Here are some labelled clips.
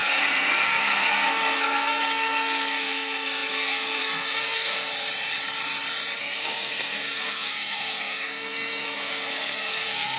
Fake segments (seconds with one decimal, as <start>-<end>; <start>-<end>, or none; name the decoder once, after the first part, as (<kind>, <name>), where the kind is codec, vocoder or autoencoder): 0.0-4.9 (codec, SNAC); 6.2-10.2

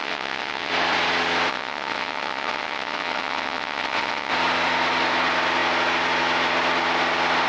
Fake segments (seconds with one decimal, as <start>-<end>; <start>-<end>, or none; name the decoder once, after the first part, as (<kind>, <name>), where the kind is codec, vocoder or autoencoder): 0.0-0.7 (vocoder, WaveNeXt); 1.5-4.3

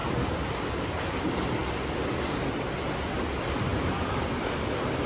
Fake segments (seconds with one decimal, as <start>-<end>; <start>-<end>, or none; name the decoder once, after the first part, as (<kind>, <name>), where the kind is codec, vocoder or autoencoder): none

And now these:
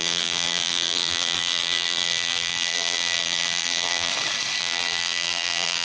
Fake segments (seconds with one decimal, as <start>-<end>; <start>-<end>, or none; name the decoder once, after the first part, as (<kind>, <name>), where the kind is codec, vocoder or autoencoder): 0.0-4.1 (vocoder, BigVGAN v2); 4.6-5.8

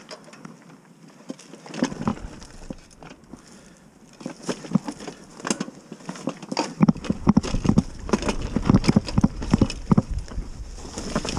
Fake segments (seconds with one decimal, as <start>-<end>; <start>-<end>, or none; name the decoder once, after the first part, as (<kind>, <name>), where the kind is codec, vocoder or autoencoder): none

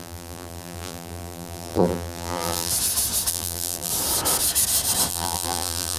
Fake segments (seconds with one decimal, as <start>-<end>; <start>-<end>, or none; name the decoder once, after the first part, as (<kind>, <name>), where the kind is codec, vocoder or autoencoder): 0.0-2.7 (vocoder, BigVGAN v2); 3.3-3.9; 5.1-6.0

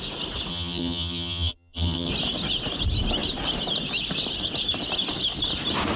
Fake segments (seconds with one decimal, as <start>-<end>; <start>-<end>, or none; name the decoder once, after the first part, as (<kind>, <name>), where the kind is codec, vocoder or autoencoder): 0.5-2.1 (vocoder, HiFi-GAN)